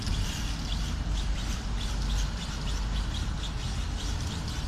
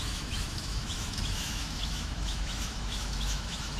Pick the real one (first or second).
first